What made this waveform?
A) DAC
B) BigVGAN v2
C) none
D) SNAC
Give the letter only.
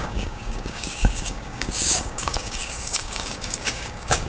A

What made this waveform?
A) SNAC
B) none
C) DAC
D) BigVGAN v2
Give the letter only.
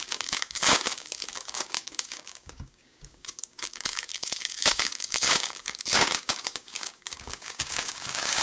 C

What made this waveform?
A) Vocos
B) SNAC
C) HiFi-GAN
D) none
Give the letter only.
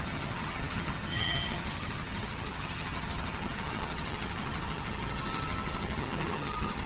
C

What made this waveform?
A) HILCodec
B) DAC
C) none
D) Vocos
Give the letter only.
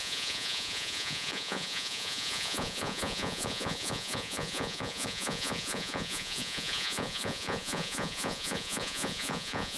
D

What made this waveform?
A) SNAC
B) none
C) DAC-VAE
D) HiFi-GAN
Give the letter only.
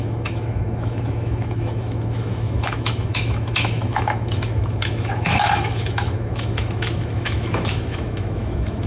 C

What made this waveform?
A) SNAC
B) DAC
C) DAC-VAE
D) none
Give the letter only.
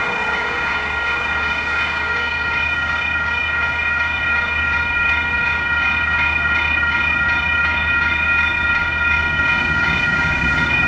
B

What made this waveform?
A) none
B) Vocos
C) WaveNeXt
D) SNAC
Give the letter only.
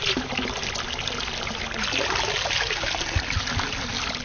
A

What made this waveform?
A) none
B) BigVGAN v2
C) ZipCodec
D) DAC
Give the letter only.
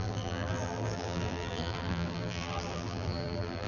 B